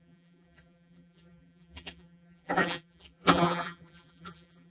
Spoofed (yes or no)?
yes